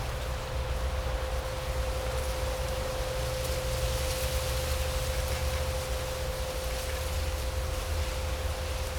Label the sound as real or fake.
real